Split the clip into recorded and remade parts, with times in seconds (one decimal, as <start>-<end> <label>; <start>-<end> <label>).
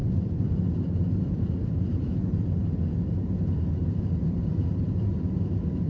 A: 0.0-0.5 remade; 0.5-5.9 recorded